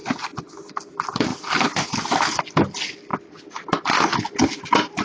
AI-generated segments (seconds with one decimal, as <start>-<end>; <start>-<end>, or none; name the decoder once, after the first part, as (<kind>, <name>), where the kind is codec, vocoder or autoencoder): 1.3-2.4 (vocoder, BigVGAN v2)